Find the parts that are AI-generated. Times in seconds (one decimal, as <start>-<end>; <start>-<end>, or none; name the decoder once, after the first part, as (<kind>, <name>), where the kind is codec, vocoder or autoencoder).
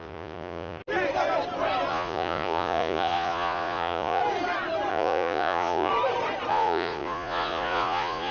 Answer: 0.0-0.8 (vocoder, Vocos); 1.9-4.2; 4.9-5.9; 6.5-8.3